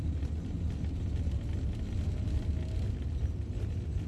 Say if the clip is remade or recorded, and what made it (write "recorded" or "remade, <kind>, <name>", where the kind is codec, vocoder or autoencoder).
recorded